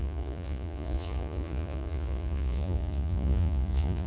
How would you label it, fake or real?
fake